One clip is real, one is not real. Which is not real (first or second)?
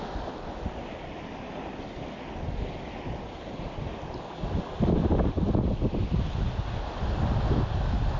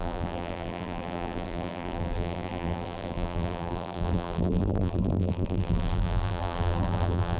second